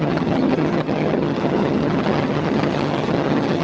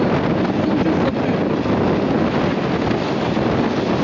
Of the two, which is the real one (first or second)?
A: second